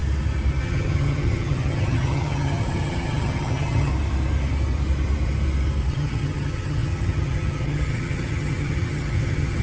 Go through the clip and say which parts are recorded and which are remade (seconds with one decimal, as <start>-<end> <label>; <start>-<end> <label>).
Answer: 0.0-0.6 recorded; 0.6-3.9 remade; 3.9-5.9 recorded; 5.9-9.6 remade